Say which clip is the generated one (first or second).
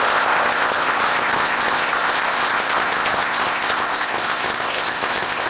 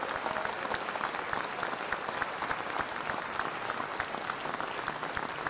first